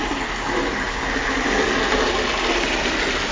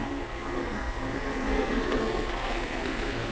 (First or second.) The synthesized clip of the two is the second